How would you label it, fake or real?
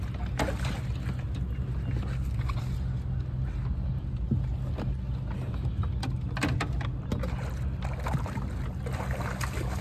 real